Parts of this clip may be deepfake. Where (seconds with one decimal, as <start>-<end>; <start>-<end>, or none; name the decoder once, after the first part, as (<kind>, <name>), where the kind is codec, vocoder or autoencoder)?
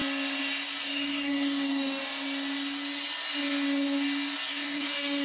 0.8-2.0 (codec, DAC); 4.5-5.2